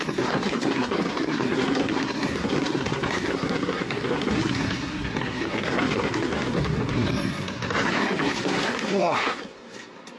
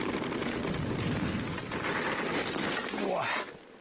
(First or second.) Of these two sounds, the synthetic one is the first